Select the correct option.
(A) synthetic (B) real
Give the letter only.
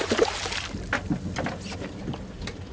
B